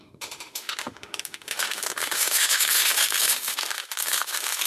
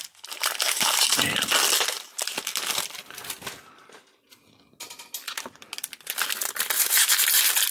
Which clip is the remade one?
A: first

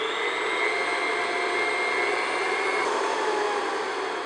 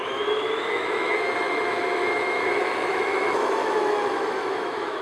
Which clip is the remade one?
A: second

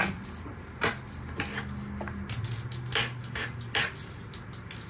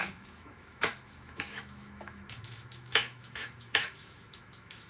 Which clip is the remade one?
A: second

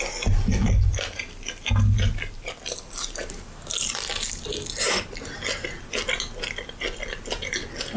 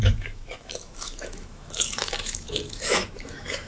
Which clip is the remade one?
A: second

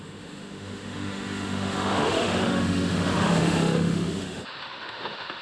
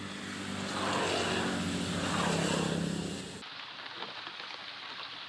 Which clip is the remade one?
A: first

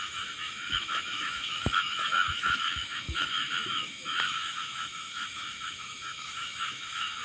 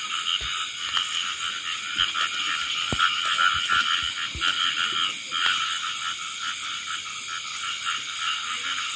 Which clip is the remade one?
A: first